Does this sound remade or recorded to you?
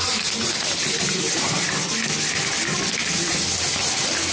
recorded